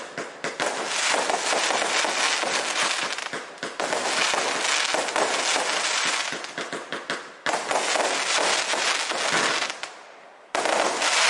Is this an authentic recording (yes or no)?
yes